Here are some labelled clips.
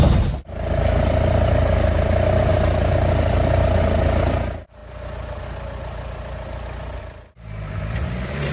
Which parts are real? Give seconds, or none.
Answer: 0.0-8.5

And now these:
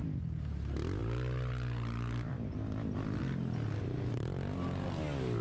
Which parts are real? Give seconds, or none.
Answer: 0.0-5.4

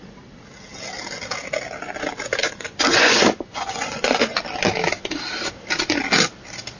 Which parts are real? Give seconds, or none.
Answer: 0.0-2.4; 4.4-6.8

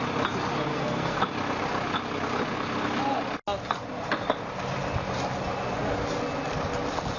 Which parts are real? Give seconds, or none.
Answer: 0.0-0.7; 1.2-7.2

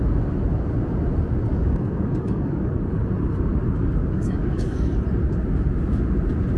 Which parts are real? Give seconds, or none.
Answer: 0.0-1.5; 2.7-4.0; 5.0-6.6

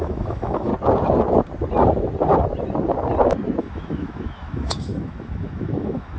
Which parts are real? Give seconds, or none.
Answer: 0.7-3.6